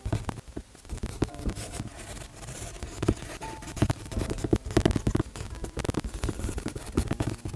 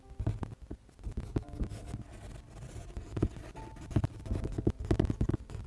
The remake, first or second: first